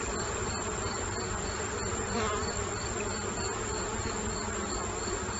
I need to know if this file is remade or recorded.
recorded